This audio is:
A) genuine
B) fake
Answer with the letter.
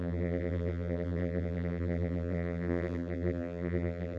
B